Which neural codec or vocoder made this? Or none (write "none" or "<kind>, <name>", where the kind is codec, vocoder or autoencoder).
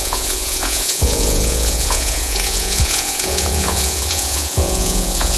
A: vocoder, Vocos